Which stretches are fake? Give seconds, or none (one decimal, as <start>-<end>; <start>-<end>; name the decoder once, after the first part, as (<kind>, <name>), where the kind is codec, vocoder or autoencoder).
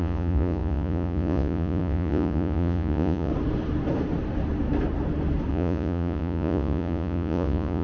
0.0-3.3 (vocoder, Vocos); 5.5-7.8